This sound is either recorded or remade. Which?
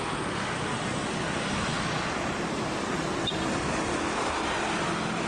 recorded